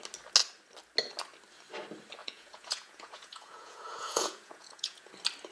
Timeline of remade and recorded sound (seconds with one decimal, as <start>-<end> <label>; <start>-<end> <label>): 0.0-2.2 recorded; 2.2-5.1 remade; 5.1-5.5 recorded